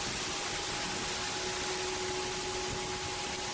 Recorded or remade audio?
recorded